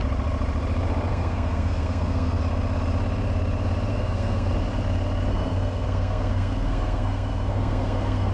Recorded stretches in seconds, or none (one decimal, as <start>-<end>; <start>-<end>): 0.0-1.1; 2.4-3.9; 4.5-5.3